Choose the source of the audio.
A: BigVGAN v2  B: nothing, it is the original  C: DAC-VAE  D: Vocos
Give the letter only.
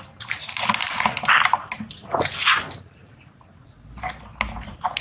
B